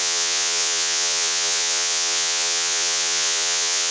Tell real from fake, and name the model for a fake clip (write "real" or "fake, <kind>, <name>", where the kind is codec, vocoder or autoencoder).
fake, vocoder, Vocos